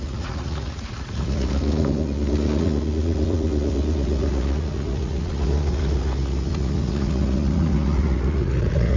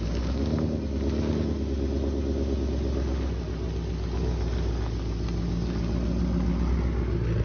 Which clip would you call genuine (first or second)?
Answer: second